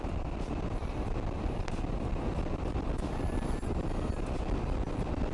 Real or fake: real